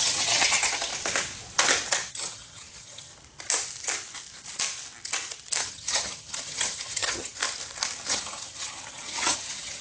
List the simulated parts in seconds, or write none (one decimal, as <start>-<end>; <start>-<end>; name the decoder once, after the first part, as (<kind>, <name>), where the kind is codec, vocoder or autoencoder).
0.0-0.9 (vocoder, HiFi-GAN); 2.1-3.1; 5.6-7.4; 8.1-9.8